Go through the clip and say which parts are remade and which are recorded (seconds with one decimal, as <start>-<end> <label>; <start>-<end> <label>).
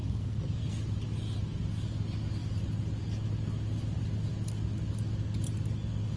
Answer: 0.0-0.8 remade; 0.8-6.2 recorded